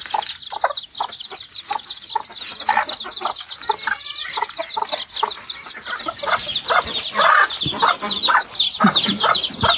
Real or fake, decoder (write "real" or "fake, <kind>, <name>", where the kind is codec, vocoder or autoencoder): real